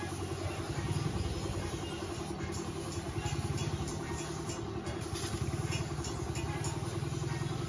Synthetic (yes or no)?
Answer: no